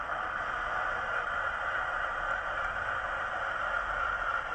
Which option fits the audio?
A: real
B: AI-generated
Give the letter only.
B